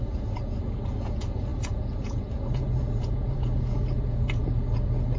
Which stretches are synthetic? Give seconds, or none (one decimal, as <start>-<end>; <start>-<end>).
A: 0.0-5.2